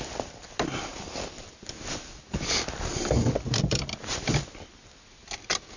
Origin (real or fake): real